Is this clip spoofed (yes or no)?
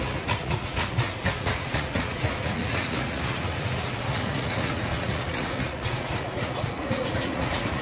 yes